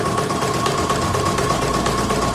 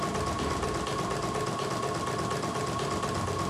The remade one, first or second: first